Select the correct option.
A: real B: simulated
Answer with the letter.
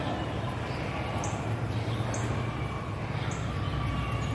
A